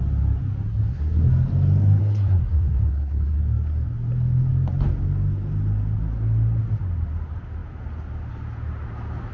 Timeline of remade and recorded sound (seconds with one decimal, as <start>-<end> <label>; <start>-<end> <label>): 0.0-0.7 recorded; 0.7-1.3 remade; 1.3-2.0 recorded; 2.0-3.4 remade; 3.4-9.3 recorded